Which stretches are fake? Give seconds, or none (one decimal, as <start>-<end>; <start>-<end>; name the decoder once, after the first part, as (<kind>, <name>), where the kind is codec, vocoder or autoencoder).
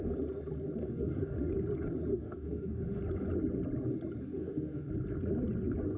0.8-1.5 (autoencoder, DAC-VAE); 2.1-3.0; 4.2-4.9